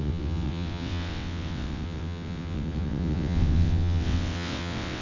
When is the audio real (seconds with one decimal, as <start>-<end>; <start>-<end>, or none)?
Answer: none